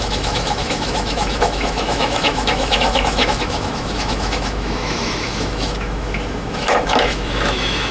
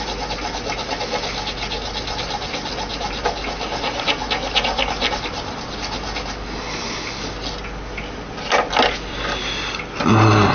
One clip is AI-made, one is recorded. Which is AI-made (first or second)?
first